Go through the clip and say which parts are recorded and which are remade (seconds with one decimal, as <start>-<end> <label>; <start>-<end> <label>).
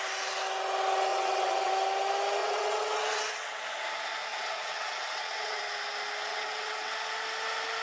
0.0-1.1 recorded; 1.1-1.7 remade; 1.7-2.4 recorded; 2.4-3.6 remade; 3.6-4.3 recorded; 4.3-5.6 remade; 5.6-6.3 recorded; 6.3-6.9 remade; 6.9-7.8 recorded